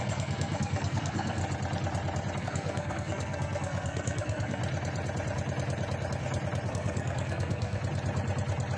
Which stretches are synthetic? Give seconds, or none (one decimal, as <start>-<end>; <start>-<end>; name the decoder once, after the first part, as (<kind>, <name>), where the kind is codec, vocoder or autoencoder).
0.0-1.4 (codec, SNAC); 2.4-4.6; 6.7-7.8